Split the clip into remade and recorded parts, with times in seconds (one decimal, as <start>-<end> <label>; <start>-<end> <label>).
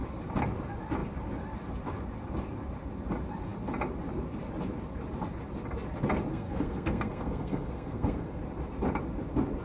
0.0-6.3 recorded; 6.3-8.4 remade; 8.4-9.6 recorded